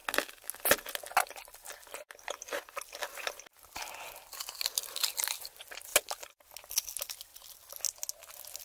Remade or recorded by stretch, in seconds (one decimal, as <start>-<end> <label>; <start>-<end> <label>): 0.0-8.6 recorded